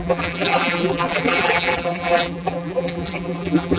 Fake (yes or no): yes